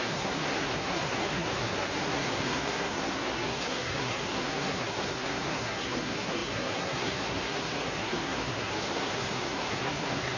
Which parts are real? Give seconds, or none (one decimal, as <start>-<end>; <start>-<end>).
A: none